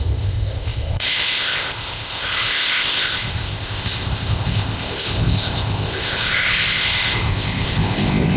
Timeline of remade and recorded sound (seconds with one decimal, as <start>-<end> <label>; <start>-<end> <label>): 0.0-8.4 remade